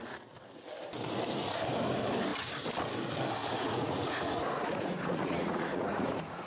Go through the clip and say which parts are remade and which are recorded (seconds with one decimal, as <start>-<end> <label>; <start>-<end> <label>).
0.0-3.4 recorded; 3.4-6.5 remade